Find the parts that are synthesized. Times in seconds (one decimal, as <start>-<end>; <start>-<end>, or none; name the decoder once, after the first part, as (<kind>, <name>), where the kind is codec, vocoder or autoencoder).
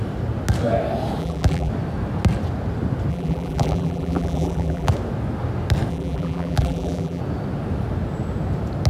1.2-1.7 (vocoder, BigVGAN v2); 3.1-4.9; 5.9-7.2